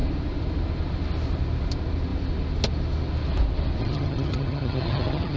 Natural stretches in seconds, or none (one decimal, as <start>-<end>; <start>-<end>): 0.0-3.8